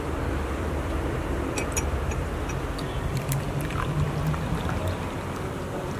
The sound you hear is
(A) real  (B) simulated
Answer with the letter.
B